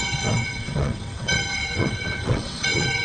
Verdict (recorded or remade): remade